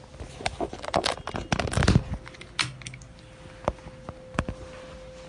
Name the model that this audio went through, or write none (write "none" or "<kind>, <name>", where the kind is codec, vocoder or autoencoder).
none